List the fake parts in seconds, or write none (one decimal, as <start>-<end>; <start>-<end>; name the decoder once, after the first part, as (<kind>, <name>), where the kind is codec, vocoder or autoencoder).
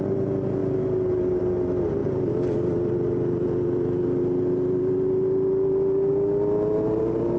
none